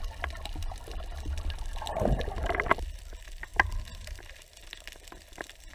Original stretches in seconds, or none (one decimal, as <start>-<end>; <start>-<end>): 0.0-3.5; 5.0-5.7